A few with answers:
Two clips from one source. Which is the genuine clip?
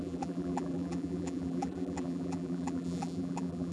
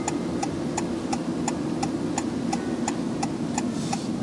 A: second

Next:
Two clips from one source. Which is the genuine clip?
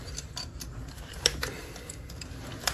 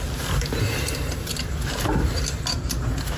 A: second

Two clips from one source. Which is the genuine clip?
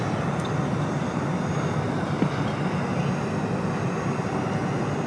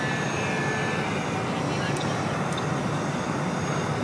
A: first